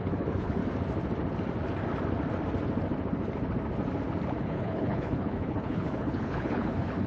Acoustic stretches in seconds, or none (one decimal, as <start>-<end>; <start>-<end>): 0.6-4.4